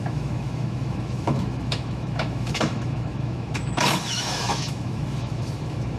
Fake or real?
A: fake